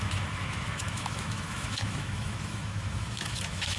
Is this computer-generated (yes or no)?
yes